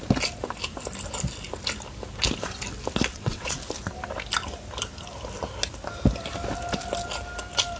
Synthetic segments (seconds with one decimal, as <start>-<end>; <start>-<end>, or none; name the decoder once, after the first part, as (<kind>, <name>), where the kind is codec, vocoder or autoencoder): 3.1-3.6 (vocoder, WaveNeXt)